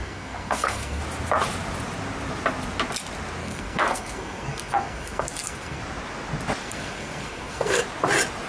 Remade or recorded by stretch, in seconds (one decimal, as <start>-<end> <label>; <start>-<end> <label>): 0.0-1.0 remade; 1.0-3.4 recorded; 3.4-5.8 remade; 5.8-6.6 recorded; 6.6-7.8 remade; 7.8-8.5 recorded